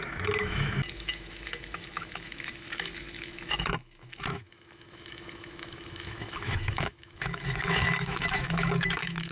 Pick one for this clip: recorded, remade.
remade